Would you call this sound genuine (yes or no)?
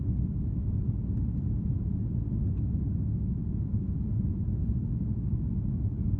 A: yes